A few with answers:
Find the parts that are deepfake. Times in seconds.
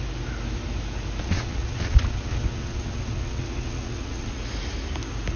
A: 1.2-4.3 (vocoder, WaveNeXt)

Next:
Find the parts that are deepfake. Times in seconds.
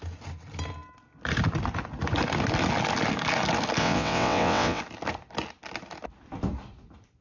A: 3.8-4.8 (vocoder, WaveNeXt)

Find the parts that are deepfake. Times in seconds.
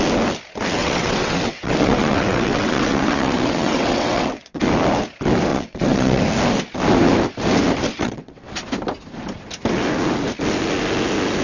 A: 0.8-4.6 (vocoder, WaveNeXt); 5.5-6.2; 7.9-8.5